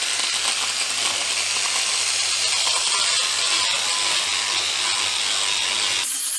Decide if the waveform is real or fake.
real